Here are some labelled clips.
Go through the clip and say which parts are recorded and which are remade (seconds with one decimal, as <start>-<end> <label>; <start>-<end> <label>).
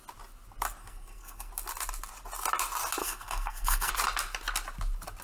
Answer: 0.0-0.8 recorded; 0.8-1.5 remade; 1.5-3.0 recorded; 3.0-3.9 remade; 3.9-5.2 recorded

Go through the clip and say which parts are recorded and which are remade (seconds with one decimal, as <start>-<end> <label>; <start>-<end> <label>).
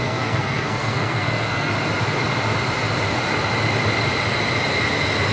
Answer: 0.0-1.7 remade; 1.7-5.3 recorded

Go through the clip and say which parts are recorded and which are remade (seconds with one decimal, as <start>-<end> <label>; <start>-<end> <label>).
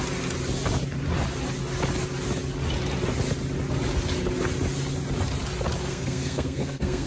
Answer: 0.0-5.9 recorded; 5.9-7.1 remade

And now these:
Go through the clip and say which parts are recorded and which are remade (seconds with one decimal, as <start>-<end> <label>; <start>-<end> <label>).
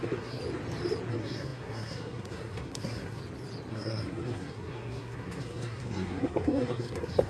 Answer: 0.0-0.4 remade; 0.4-1.1 recorded; 1.1-3.2 remade; 3.2-3.7 recorded; 3.7-7.3 remade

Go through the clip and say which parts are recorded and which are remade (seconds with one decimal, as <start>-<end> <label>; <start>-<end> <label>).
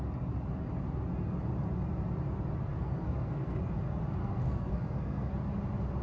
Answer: 0.0-2.7 recorded; 2.7-3.7 remade; 3.7-4.2 recorded; 4.2-5.3 remade; 5.3-6.0 recorded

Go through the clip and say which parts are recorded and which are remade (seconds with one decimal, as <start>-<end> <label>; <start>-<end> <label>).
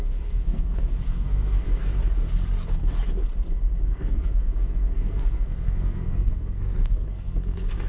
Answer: 0.0-1.9 remade; 1.9-3.8 recorded; 3.8-7.9 remade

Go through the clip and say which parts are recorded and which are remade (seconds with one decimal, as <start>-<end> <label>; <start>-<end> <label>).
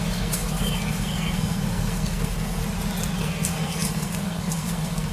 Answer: 0.0-2.6 remade; 2.6-3.2 recorded; 3.2-5.1 remade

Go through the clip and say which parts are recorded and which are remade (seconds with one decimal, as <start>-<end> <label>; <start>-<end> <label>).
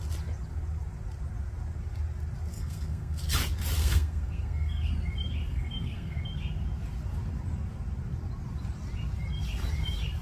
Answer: 0.0-2.5 recorded; 2.5-3.2 remade; 3.2-3.8 recorded; 3.8-4.9 remade; 4.9-5.5 recorded; 5.5-6.3 remade; 6.3-10.2 recorded